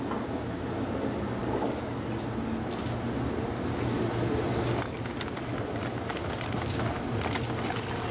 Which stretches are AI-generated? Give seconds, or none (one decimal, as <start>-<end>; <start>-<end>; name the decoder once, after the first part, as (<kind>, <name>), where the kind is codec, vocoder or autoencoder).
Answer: 1.4-2.2 (codec, DAC)